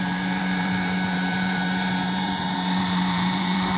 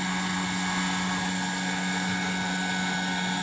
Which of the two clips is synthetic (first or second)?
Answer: first